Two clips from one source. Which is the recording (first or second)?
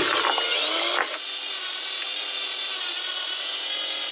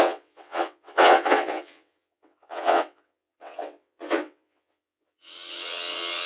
first